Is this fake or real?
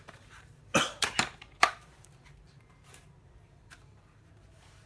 fake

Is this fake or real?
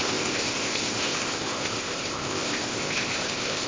fake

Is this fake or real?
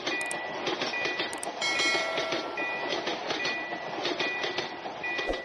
real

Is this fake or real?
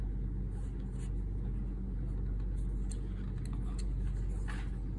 real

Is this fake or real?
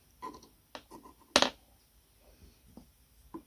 real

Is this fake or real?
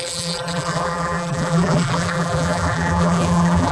fake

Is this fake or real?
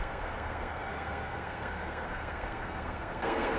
fake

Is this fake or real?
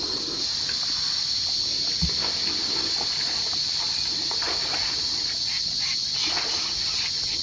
real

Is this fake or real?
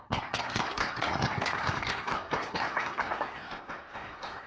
fake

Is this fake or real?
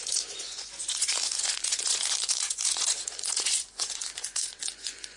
fake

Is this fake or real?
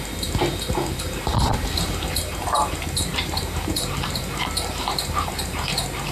fake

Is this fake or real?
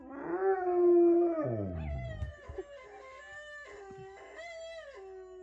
real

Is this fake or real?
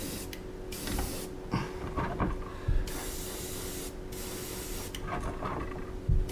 real